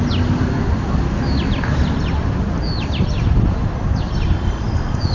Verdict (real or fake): real